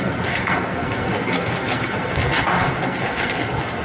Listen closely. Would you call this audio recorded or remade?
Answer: remade